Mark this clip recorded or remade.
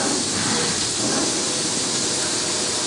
recorded